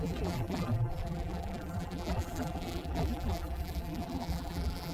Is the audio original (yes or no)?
no